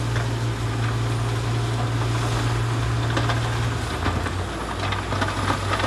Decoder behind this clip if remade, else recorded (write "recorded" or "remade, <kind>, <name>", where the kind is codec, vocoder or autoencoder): recorded